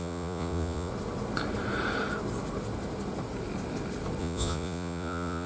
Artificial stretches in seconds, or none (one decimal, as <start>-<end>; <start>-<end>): 0.0-0.9; 4.2-5.5